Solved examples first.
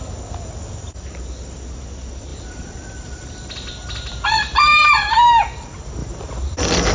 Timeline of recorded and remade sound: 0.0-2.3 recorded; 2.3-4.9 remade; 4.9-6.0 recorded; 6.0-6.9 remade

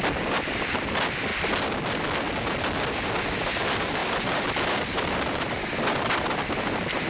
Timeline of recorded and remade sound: 0.0-1.3 remade; 1.3-3.5 recorded; 3.5-7.1 remade

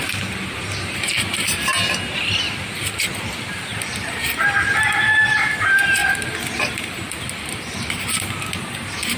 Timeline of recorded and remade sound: 0.0-3.7 remade; 3.7-4.2 recorded; 4.2-6.0 remade; 6.0-6.7 recorded; 6.7-9.2 remade

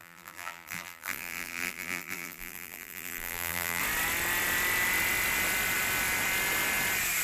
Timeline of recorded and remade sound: 0.0-3.8 remade; 3.8-7.2 recorded

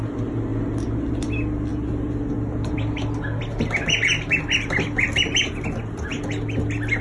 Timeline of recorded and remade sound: 0.0-7.0 recorded

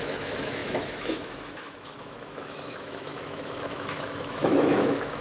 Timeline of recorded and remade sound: 0.0-5.2 remade

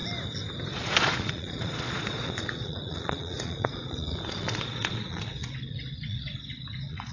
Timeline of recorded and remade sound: 0.0-0.7 recorded; 0.7-7.1 remade